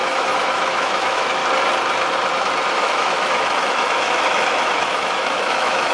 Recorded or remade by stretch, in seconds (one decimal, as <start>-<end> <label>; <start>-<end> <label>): 0.0-1.4 remade; 1.4-2.7 recorded; 2.7-5.9 remade